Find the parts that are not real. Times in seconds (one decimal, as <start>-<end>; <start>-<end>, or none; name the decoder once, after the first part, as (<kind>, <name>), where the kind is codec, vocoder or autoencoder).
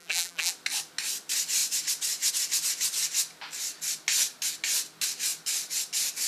0.0-0.5 (vocoder, BigVGAN v2)